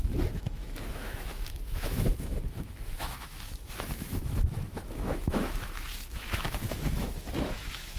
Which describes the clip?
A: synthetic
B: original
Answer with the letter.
A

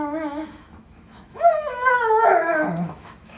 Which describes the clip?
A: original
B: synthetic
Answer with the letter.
B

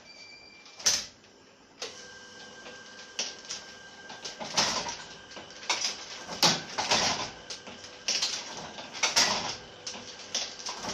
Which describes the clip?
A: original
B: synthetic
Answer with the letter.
A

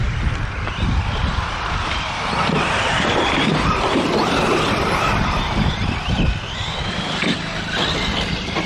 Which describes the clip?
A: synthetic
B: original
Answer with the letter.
B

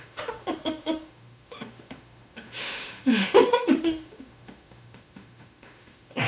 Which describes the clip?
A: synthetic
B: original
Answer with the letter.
A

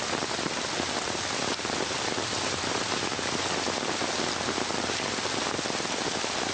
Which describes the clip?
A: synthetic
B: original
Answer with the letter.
B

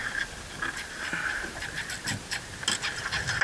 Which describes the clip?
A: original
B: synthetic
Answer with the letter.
A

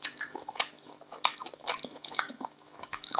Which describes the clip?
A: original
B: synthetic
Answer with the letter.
B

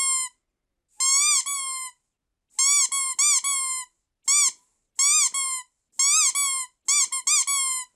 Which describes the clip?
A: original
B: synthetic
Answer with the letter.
A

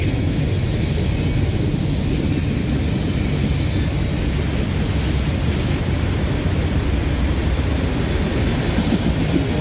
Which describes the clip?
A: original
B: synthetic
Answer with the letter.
A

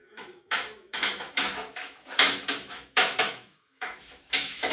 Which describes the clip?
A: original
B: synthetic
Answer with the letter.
B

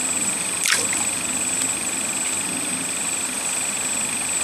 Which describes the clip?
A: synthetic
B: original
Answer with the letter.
B